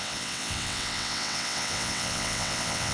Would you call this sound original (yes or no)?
no